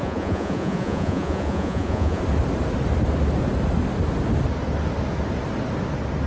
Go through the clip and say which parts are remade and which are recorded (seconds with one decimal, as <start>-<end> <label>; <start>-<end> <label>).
0.0-2.2 remade; 2.2-6.3 recorded